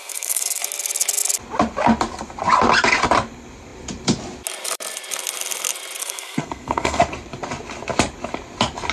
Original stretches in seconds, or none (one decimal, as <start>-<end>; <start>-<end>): 0.6-6.0; 7.0-8.9

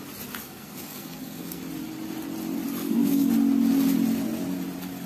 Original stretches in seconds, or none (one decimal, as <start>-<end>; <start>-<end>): 0.0-0.4; 1.6-2.8; 3.3-5.1

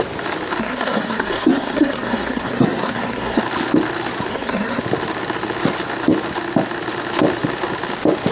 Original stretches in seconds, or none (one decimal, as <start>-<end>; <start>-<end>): 0.0-0.6; 3.4-4.3; 4.8-8.3

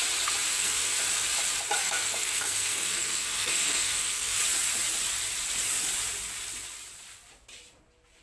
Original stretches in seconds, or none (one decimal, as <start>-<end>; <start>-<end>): 0.0-0.5; 1.0-1.8; 4.4-8.2

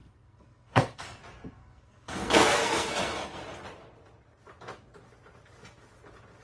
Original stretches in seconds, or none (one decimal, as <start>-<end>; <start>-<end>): 1.2-1.6; 3.4-6.4

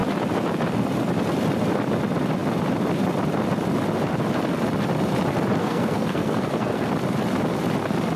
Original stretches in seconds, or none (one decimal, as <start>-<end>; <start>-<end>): 0.0-5.6; 6.9-8.2